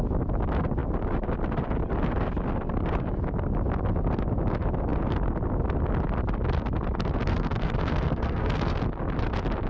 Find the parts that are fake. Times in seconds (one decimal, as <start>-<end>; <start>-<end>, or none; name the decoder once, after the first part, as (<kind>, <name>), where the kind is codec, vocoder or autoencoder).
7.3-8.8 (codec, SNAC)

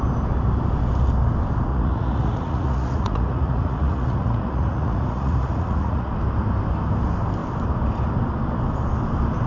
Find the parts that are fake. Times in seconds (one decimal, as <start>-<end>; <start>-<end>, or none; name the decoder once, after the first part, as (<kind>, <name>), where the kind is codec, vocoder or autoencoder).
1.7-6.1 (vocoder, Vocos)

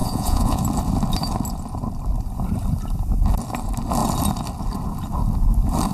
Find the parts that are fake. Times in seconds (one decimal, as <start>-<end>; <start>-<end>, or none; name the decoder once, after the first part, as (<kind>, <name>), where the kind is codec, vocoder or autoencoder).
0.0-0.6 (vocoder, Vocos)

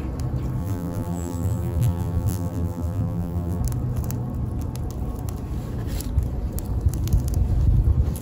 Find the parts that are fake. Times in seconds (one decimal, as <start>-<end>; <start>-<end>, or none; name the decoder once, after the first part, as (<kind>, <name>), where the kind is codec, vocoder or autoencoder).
0.6-3.6 (vocoder, BigVGAN v2)

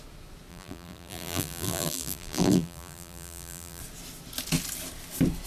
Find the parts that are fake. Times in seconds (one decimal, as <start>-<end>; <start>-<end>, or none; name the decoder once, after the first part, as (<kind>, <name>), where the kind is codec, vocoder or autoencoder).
0.5-3.8 (vocoder, BigVGAN v2)